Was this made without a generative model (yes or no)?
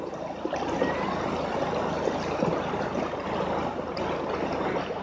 yes